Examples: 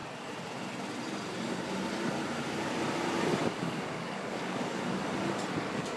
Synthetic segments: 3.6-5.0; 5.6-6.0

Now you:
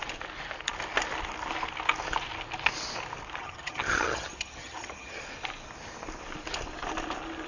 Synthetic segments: 3.4-5.2

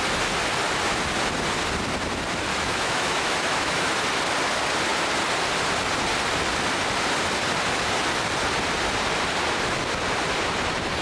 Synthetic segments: 2.5-3.9